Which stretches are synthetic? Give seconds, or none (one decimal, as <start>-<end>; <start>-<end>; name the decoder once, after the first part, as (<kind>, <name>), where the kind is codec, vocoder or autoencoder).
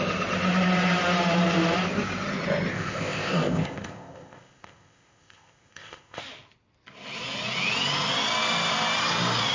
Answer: 2.7-6.2 (codec, ZipCodec)